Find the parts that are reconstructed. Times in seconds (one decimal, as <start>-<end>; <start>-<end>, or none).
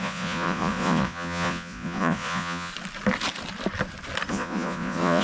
0.0-2.7; 4.3-5.2